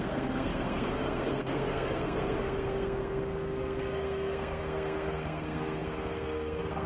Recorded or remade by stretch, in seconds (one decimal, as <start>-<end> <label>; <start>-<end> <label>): 0.0-6.9 remade